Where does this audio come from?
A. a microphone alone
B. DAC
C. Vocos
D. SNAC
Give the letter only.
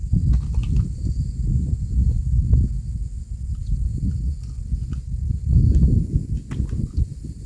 A